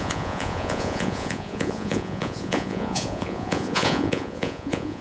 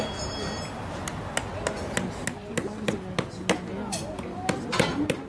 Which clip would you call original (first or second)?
second